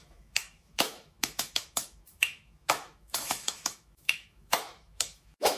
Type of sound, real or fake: fake